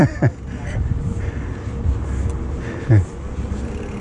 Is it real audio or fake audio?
real